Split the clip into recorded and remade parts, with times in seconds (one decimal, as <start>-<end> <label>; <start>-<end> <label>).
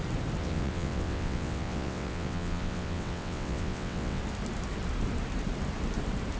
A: 0.0-0.4 recorded; 0.4-4.2 remade; 4.2-6.4 recorded